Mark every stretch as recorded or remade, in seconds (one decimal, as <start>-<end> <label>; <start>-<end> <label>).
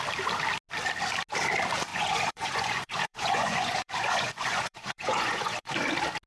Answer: 0.0-1.9 recorded; 1.9-5.7 remade; 5.7-6.3 recorded